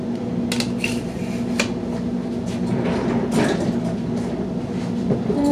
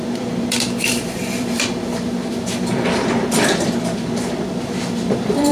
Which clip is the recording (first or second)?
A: first